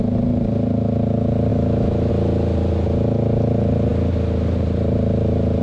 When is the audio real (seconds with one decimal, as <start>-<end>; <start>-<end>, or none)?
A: 0.0-1.5; 2.1-5.6